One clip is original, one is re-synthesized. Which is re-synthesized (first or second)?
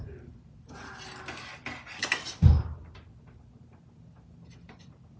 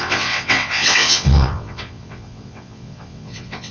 second